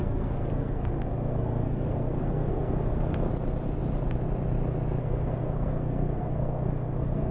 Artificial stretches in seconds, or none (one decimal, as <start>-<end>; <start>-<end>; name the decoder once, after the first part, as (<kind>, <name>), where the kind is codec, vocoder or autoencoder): 0.0-3.3 (codec, SNAC); 5.0-7.3